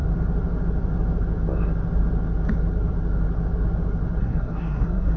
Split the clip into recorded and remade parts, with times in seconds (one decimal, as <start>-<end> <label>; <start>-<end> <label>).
0.0-4.2 recorded; 4.2-5.2 remade